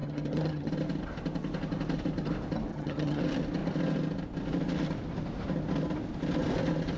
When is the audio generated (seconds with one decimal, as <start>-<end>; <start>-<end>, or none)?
0.0-0.7; 2.7-3.2